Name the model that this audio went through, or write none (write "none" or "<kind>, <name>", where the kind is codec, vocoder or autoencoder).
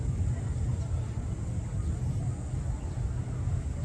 none